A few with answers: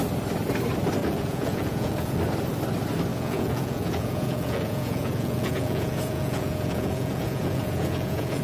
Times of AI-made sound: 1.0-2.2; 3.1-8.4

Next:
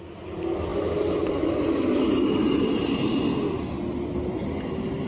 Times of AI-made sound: none

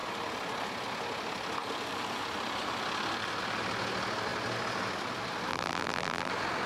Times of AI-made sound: 5.5-6.3

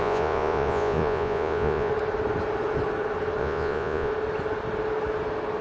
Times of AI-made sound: 0.0-1.9; 3.4-4.1

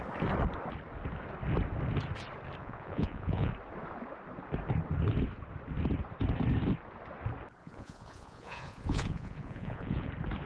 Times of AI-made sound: 2.6-3.5; 7.6-10.1

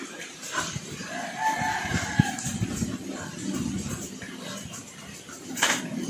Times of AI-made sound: 0.0-1.0; 1.9-6.1

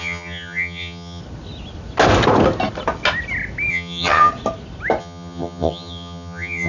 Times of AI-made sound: 0.0-1.2; 3.7-4.3; 5.0-6.7